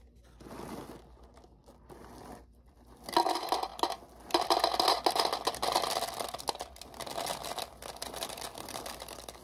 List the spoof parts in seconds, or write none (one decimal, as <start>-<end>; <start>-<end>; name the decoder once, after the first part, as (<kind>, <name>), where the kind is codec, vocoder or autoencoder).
none